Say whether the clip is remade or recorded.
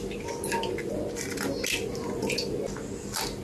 recorded